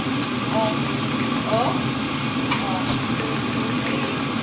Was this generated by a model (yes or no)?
no